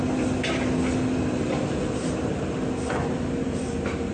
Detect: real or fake real